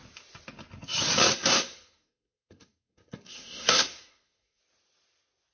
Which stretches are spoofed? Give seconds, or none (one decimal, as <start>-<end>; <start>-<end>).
1.3-4.6